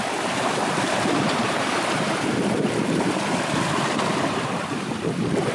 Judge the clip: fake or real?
fake